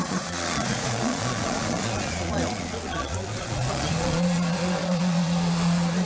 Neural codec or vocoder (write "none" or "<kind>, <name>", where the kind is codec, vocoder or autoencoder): vocoder, Vocos